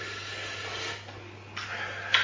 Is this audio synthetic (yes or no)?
no